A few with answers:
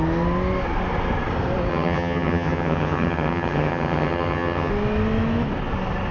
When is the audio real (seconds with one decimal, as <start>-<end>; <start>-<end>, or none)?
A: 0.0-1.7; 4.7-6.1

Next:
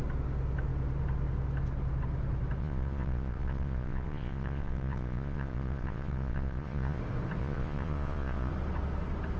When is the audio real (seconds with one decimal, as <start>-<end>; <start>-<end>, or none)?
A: 0.0-2.6; 7.0-7.4; 8.5-9.4

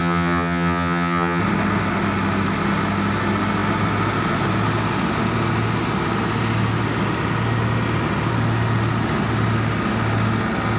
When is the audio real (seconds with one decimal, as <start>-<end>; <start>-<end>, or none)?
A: 1.4-10.8

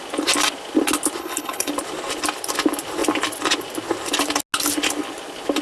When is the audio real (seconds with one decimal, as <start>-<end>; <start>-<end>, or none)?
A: 0.0-1.2; 1.7-5.6

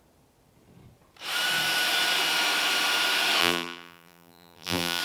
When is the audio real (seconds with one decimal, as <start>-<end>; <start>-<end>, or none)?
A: 0.0-3.4

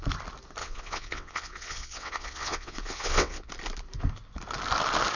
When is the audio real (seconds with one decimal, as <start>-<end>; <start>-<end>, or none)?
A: 0.0-0.6; 3.5-5.2